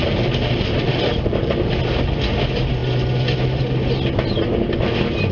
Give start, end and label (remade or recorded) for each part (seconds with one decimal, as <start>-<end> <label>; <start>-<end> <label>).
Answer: 0.0-1.7 remade; 1.7-5.3 recorded